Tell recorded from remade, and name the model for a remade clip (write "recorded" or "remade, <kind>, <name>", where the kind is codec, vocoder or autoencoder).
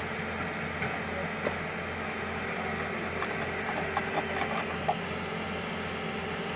recorded